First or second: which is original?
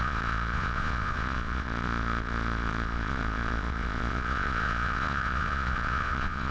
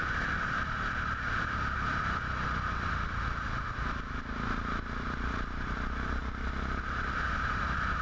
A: second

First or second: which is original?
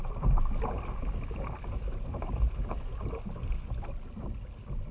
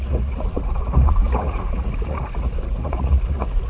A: first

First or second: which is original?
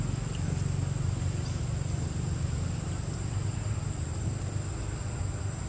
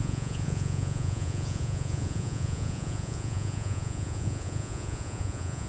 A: first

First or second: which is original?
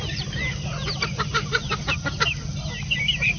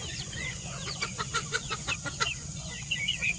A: first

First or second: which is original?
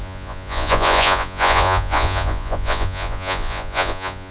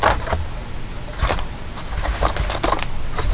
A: second